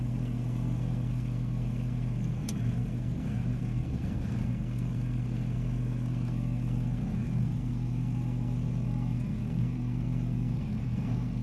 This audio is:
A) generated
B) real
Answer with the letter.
A